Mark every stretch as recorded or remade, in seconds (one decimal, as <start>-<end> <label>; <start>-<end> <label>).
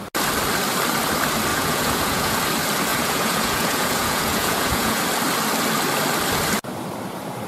0.0-1.5 recorded; 1.5-2.4 remade; 2.4-2.9 recorded; 2.9-5.0 remade; 5.0-7.5 recorded